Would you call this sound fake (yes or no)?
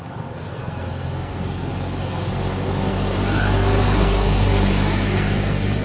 yes